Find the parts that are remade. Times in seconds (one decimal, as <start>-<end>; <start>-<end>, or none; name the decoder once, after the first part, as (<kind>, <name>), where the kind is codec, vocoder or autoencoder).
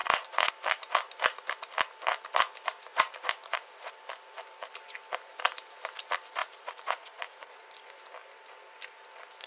0.0-0.5 (vocoder, Vocos); 2.9-3.9; 6.4-7.6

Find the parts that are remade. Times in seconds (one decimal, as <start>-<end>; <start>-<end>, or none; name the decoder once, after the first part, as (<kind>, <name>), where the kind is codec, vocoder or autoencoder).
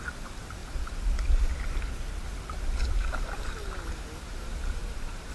4.8-5.3 (vocoder, BigVGAN v2)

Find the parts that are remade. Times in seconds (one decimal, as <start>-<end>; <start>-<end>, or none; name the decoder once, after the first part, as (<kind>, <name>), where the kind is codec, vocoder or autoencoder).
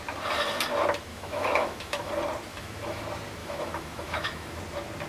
1.1-2.1 (autoencoder, DAC-VAE); 2.5-3.0; 3.4-4.6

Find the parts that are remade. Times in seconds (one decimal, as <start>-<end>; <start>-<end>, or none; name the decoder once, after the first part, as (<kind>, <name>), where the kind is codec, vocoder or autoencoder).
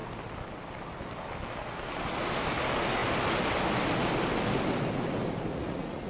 5.5-6.1 (vocoder, Vocos)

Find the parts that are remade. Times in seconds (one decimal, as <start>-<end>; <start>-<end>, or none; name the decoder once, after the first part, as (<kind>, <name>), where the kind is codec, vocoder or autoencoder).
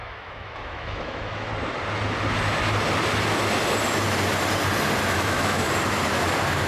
0.0-1.5 (autoencoder, DAC-VAE); 5.1-5.6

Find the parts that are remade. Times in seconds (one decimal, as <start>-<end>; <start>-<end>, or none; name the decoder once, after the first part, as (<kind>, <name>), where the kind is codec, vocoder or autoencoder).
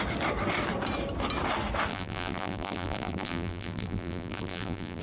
1.9-5.0 (vocoder, BigVGAN v2)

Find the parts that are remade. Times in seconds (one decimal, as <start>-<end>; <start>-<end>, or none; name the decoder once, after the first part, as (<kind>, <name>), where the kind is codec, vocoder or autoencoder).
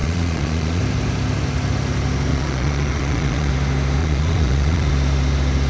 0.0-0.8 (vocoder, Vocos); 2.3-3.5; 4.0-4.9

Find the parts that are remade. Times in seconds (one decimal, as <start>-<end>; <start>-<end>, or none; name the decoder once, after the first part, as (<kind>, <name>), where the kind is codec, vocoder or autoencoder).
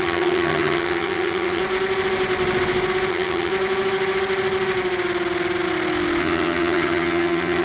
0.0-1.6 (vocoder, HiFi-GAN); 3.1-3.5; 6.2-7.6